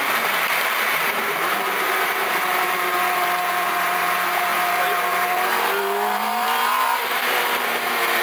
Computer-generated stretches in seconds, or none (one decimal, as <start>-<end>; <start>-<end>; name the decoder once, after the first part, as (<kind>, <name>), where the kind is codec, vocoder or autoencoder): 0.0-2.9 (vocoder, BigVGAN v2); 3.5-8.2